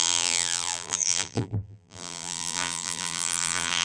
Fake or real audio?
fake